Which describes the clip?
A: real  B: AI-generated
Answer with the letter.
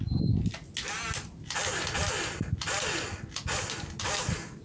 A